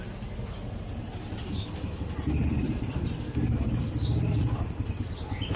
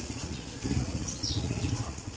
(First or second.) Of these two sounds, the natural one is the first